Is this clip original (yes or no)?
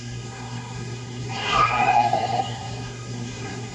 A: no